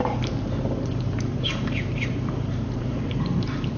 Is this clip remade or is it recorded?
remade